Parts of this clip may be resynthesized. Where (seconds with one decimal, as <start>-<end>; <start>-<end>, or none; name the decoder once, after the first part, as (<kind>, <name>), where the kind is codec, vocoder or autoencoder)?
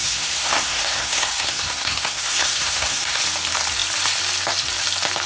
0.0-3.2 (codec, SNAC)